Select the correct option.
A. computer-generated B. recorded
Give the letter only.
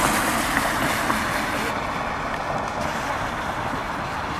B